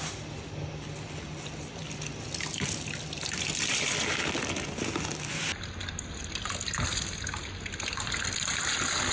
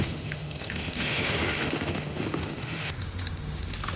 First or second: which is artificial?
second